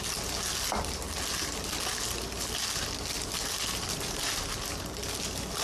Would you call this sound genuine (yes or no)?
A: yes